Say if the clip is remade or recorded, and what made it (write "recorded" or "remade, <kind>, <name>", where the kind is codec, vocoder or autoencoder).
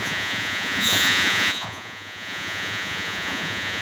remade, vocoder, Vocos